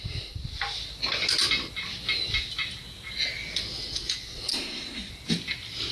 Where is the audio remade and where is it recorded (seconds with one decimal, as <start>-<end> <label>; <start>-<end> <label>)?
0.0-4.5 recorded; 4.5-5.1 remade; 5.1-5.9 recorded